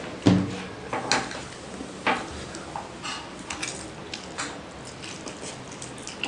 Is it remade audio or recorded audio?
recorded